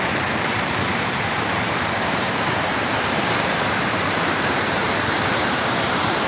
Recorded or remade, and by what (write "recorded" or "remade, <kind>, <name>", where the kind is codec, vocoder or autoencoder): remade, vocoder, BigVGAN v2